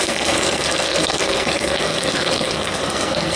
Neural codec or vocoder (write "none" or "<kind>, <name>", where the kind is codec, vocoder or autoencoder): codec, SNAC